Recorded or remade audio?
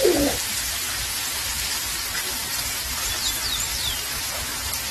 remade